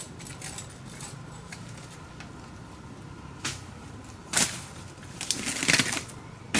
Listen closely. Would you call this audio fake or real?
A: real